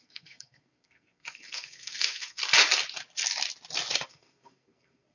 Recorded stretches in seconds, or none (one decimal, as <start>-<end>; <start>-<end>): 2.4-4.1